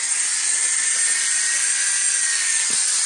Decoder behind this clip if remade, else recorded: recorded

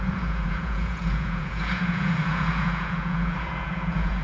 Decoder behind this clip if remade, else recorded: remade, vocoder, Vocos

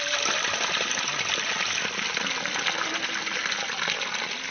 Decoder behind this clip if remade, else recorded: recorded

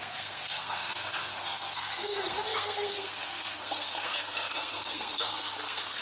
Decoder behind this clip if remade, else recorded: remade, codec, SNAC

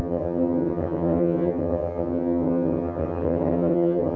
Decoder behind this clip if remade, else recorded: remade, vocoder, HiFi-GAN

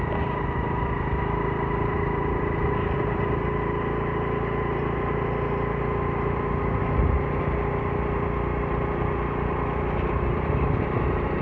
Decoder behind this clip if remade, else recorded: recorded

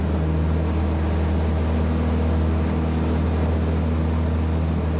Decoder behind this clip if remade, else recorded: recorded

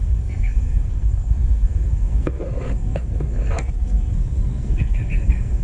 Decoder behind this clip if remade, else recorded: remade, codec, SNAC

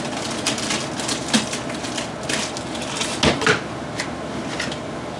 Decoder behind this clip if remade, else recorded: recorded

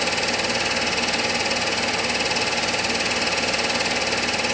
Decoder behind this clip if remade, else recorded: recorded